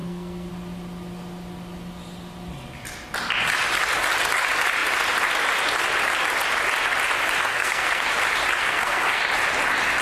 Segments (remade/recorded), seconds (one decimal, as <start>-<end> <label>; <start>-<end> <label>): 0.0-0.5 remade; 0.5-7.5 recorded; 7.5-8.1 remade; 8.1-8.6 recorded; 8.6-9.2 remade; 9.2-10.0 recorded